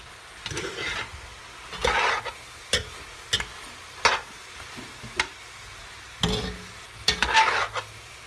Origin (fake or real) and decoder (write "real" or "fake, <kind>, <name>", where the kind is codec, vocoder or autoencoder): real